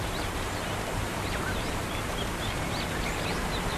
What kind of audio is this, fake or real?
fake